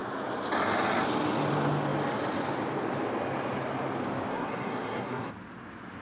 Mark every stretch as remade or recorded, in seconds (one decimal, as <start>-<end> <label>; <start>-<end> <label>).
0.0-4.3 recorded; 4.3-5.3 remade; 5.3-6.0 recorded